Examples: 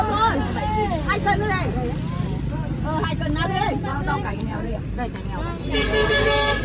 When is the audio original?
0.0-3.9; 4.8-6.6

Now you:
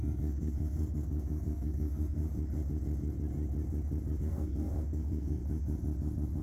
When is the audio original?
2.2-4.2; 5.4-6.4

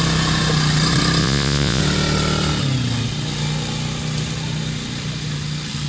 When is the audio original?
0.0-1.2; 1.8-5.9